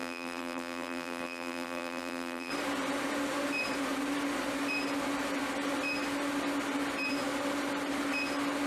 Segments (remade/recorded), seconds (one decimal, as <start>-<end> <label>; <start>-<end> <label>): 0.0-2.5 remade; 2.5-8.7 recorded